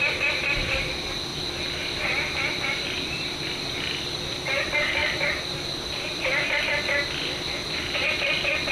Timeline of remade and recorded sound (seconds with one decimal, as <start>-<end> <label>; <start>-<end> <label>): 0.0-1.3 recorded; 1.3-3.5 remade; 3.5-5.0 recorded; 5.0-6.6 remade; 6.6-8.7 recorded